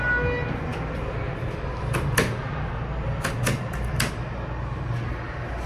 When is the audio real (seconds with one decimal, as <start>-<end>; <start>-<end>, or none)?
0.0-0.7; 4.1-5.7

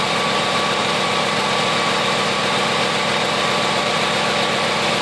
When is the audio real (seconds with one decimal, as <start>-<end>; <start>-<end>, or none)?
0.0-5.0